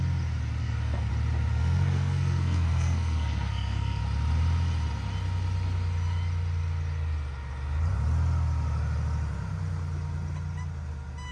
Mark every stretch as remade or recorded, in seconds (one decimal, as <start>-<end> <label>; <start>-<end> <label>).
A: 0.0-0.6 recorded; 0.6-1.1 remade; 1.1-1.5 recorded; 1.5-4.0 remade; 4.0-11.3 recorded